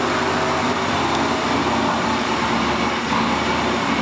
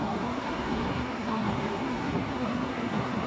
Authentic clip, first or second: first